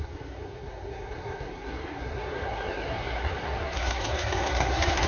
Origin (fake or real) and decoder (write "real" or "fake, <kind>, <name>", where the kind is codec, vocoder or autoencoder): fake, codec, SNAC